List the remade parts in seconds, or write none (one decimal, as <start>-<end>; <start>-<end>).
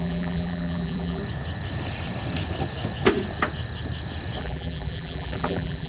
0.0-1.2; 4.4-5.9